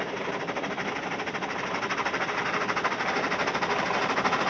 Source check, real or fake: real